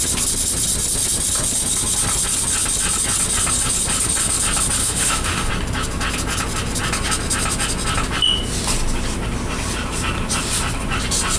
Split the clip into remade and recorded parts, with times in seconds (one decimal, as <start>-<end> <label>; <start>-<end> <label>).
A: 0.0-4.8 recorded; 4.8-5.5 remade; 5.5-11.4 recorded